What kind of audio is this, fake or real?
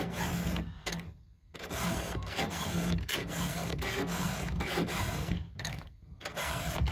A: fake